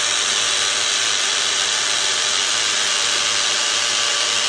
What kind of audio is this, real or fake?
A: fake